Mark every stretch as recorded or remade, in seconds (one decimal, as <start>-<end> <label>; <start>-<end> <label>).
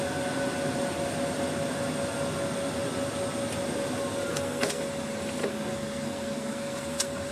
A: 0.0-4.3 recorded; 4.3-4.9 remade; 4.9-5.4 recorded; 5.4-7.3 remade